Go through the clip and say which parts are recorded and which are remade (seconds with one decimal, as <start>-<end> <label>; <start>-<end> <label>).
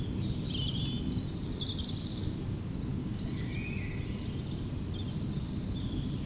0.0-2.9 recorded; 2.9-3.5 remade; 3.5-6.3 recorded